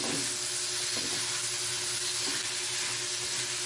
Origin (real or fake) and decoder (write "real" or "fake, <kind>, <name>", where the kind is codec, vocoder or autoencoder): real